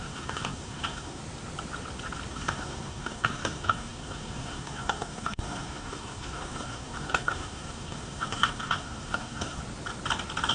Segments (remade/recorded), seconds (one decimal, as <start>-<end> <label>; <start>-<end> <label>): 0.0-1.2 remade; 1.2-2.3 recorded; 2.3-9.6 remade; 9.6-10.5 recorded